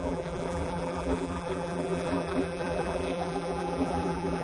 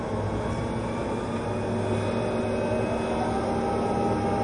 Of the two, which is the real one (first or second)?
second